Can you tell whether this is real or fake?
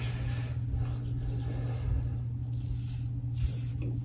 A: real